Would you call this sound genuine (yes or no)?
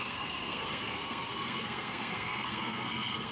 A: no